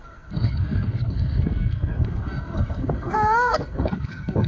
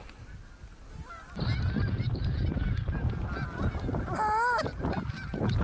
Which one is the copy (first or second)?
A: first